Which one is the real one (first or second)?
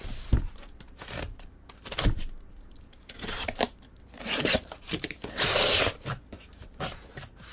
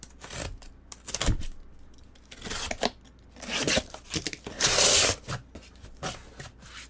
second